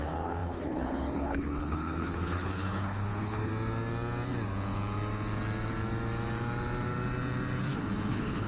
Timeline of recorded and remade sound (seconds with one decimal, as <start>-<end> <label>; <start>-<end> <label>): 0.0-3.5 remade; 3.5-8.1 recorded; 8.1-8.5 remade

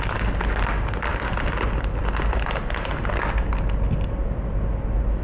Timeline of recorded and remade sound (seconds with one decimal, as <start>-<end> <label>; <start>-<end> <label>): 0.0-5.2 recorded

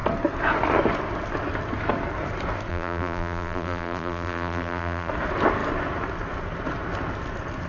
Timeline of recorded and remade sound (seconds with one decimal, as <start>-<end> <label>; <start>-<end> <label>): 0.0-2.7 recorded; 2.7-5.1 remade; 5.1-7.7 recorded

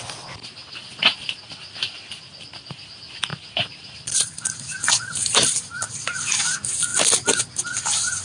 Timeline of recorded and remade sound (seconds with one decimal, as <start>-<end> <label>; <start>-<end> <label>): 0.0-0.6 recorded; 0.6-2.1 remade; 2.1-3.3 recorded; 3.3-4.8 remade; 4.8-5.2 recorded; 5.2-5.8 remade; 5.8-8.2 recorded

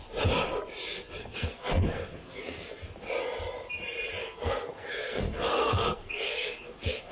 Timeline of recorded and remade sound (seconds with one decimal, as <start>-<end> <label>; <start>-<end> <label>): 0.0-1.2 recorded; 1.2-2.7 remade; 2.7-4.2 recorded; 4.2-7.1 remade

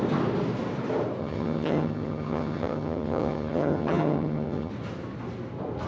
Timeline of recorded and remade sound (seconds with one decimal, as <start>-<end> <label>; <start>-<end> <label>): 0.0-1.2 recorded; 1.2-4.7 remade; 4.7-5.9 recorded

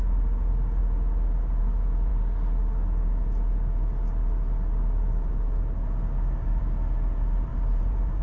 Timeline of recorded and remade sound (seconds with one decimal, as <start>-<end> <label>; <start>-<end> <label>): 0.0-7.5 recorded; 7.5-8.2 remade